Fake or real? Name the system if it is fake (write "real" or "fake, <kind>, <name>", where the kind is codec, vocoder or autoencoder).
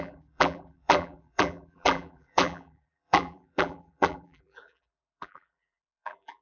fake, vocoder, BigVGAN v2